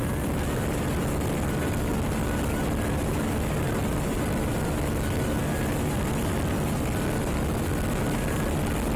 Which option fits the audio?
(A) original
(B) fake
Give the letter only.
A